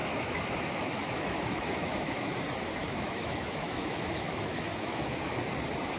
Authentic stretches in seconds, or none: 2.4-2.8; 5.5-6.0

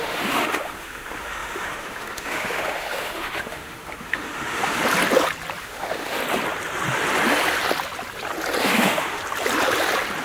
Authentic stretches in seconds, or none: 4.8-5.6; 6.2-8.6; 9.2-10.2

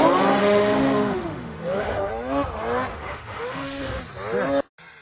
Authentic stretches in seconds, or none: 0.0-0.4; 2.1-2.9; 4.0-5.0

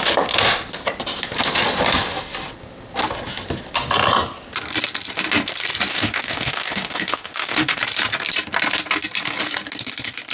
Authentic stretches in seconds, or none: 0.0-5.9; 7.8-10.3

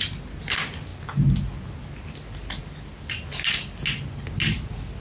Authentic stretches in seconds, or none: 0.0-5.0

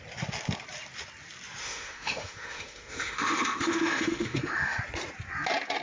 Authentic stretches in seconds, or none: 0.0-1.6; 4.8-5.8